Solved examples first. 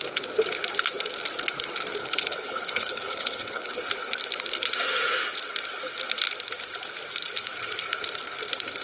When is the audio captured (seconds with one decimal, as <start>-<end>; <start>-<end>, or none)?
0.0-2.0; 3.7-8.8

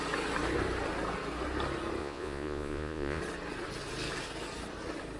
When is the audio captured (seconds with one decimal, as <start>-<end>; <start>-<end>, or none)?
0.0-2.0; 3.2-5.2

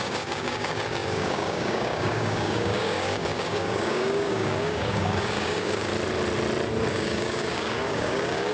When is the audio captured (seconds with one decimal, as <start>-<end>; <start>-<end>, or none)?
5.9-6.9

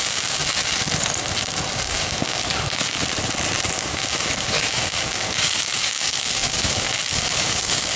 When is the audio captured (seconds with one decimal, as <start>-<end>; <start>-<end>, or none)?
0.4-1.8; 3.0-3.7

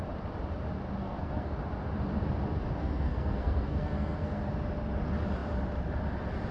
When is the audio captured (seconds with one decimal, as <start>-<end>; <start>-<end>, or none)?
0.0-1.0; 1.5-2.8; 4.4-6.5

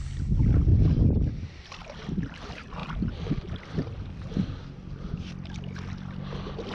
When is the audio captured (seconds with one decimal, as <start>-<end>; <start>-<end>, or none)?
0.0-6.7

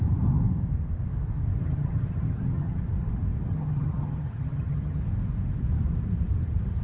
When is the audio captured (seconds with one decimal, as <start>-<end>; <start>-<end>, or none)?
0.0-1.6; 2.8-3.5; 5.0-6.8